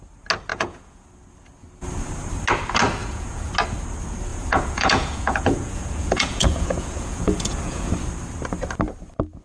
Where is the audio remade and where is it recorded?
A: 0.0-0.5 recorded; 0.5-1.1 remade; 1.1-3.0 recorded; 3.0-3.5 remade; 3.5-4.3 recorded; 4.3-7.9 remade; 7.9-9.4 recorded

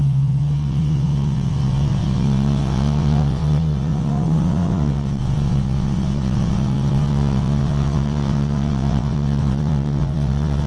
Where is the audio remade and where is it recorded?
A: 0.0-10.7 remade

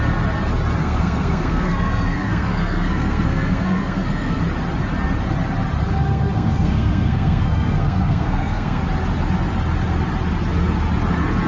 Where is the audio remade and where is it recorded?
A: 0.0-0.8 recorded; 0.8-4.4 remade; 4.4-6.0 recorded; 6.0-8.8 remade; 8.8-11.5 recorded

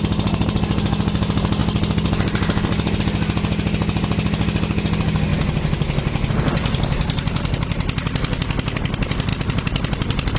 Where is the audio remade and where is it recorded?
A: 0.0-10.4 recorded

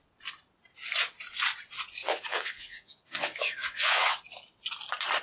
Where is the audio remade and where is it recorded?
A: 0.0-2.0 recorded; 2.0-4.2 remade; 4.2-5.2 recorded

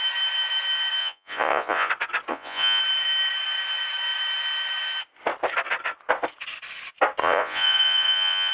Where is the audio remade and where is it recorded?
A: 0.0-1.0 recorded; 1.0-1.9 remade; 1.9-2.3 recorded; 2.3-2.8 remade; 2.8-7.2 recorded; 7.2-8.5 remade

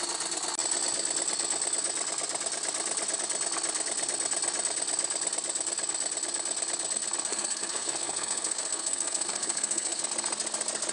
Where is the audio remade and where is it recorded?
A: 0.0-7.3 recorded; 7.3-10.0 remade; 10.0-10.9 recorded